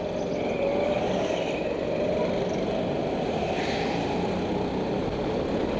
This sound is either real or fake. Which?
real